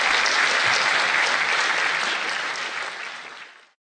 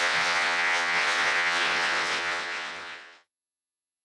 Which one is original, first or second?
first